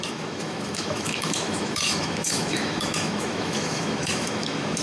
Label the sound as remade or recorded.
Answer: remade